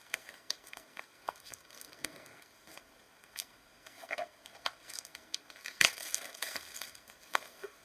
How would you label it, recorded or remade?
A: remade